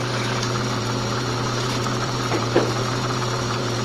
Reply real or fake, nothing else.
fake